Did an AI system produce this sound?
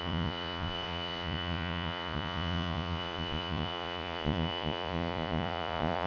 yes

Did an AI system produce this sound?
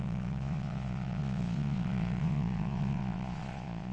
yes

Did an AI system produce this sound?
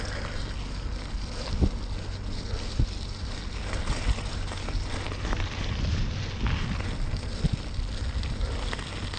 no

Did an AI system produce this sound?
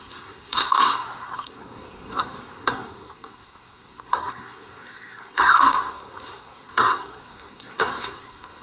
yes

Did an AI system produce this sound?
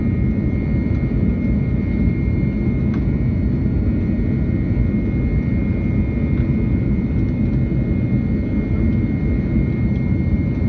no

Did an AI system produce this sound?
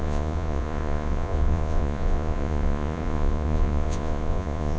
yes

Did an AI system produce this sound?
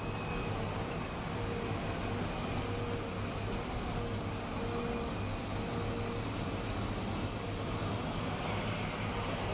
no